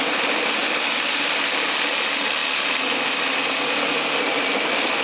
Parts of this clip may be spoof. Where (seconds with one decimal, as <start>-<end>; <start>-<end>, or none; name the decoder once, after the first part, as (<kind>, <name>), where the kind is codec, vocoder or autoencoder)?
none